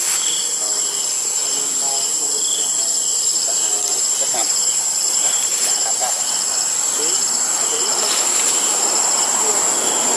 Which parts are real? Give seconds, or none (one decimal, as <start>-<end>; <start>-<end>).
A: 0.0-10.2